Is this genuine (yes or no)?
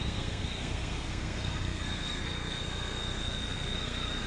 no